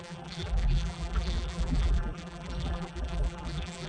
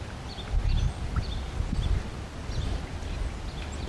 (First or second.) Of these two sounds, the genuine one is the second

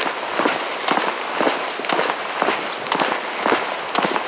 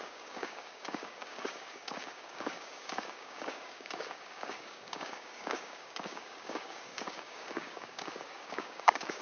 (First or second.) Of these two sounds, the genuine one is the first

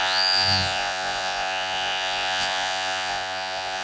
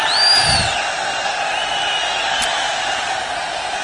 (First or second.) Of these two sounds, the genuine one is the second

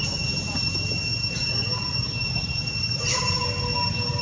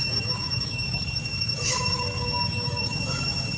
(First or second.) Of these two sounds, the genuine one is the first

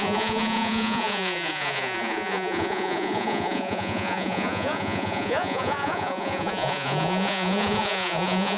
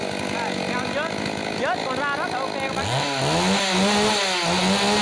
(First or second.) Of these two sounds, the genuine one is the second